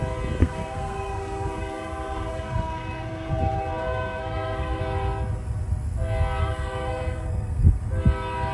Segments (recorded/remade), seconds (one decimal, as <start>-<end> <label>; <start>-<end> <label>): 0.0-0.4 recorded; 0.4-4.8 remade; 4.8-6.4 recorded; 6.4-7.8 remade; 7.8-8.5 recorded